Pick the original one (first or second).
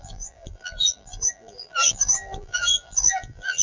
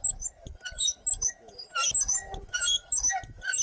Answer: second